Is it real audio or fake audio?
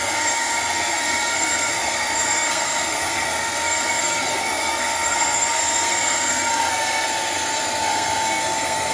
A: fake